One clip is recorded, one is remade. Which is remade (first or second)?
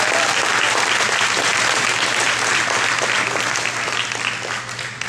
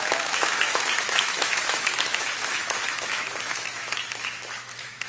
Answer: second